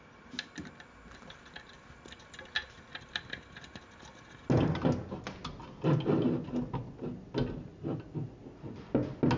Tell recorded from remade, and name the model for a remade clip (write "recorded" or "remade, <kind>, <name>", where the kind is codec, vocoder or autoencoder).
recorded